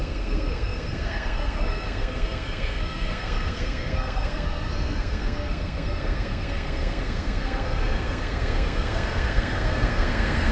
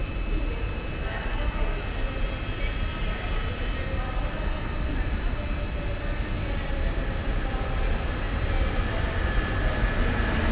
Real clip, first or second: second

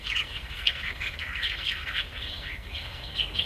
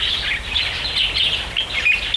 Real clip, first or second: second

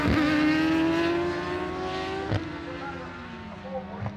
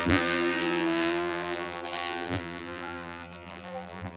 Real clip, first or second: first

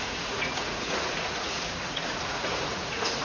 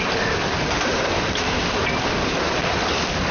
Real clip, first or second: second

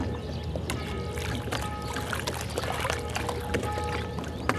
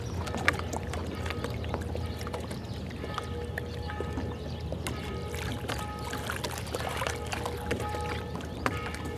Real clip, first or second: first